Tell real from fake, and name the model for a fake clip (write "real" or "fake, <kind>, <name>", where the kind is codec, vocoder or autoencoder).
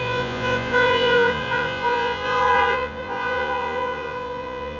fake, vocoder, Vocos